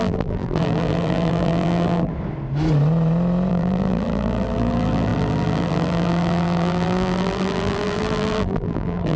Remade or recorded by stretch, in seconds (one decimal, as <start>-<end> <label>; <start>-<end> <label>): 0.0-2.1 remade; 2.1-3.5 recorded; 3.5-9.2 remade